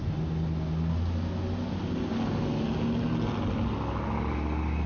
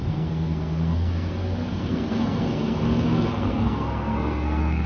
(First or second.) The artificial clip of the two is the second